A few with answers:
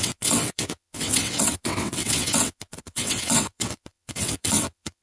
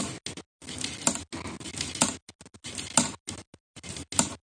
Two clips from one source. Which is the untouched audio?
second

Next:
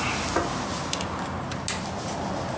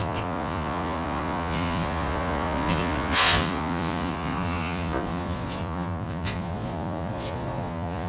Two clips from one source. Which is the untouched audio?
first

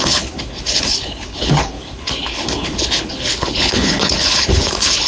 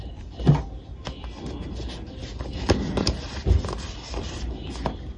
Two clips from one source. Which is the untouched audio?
second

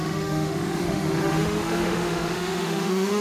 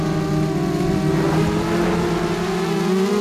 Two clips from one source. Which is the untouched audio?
second